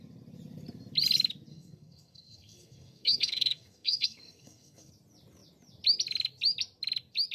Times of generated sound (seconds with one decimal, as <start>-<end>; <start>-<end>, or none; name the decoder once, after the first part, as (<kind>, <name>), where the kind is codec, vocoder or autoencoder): 1.5-4.9 (codec, SNAC)

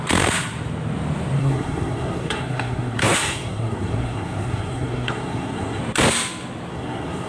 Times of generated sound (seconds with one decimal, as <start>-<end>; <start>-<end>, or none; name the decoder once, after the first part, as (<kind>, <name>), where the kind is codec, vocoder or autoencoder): 1.4-5.8 (codec, SNAC); 6.7-7.3

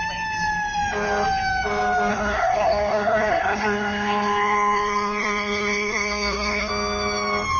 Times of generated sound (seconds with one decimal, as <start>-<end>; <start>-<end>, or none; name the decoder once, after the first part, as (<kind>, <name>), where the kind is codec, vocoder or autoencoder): 2.1-6.7 (codec, SNAC)

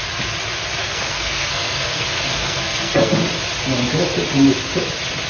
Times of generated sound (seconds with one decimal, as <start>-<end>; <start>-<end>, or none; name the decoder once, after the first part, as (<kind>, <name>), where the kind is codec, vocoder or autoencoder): 0.8-3.1 (codec, SNAC)

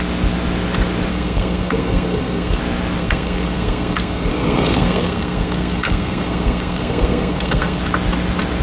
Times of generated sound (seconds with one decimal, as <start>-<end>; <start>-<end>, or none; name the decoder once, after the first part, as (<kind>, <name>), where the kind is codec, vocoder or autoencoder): 1.1-2.6 (codec, SNAC); 3.0-7.8

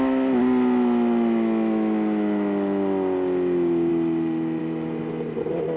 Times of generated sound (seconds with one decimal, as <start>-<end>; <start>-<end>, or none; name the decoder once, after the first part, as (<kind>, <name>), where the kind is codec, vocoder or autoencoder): none

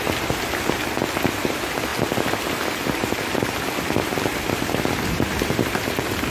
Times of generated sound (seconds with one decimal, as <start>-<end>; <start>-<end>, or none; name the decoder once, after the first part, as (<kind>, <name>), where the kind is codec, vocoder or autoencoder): none